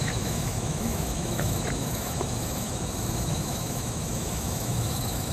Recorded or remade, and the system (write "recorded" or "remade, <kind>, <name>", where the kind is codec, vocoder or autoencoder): remade, autoencoder, DAC-VAE